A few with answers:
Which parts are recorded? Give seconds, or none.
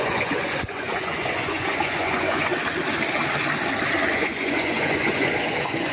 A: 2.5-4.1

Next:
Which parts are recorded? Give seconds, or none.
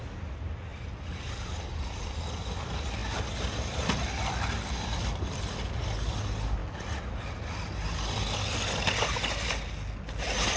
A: 0.0-10.6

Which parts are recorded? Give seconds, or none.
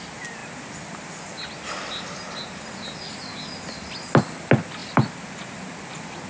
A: 0.0-6.3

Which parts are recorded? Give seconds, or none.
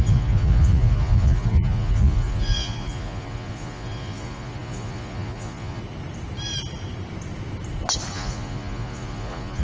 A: 5.8-8.1